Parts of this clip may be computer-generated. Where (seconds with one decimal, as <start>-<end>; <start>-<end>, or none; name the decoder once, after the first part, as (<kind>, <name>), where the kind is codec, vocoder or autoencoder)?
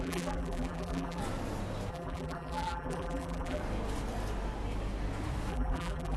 0.0-1.2 (vocoder, BigVGAN v2); 1.9-3.6; 5.5-6.2